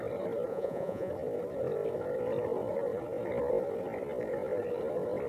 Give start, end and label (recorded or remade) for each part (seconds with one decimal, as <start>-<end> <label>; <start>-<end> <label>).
0.0-0.5 recorded; 0.5-1.1 remade; 1.1-5.3 recorded